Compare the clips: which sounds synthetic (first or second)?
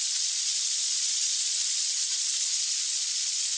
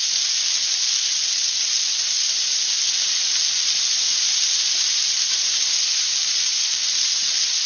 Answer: first